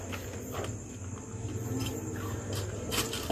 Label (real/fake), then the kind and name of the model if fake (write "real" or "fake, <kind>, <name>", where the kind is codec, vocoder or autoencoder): real